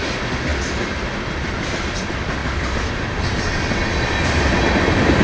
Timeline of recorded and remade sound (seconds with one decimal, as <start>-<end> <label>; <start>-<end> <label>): 0.0-5.2 recorded